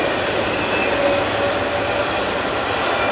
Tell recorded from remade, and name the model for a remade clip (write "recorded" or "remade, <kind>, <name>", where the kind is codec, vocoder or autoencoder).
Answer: recorded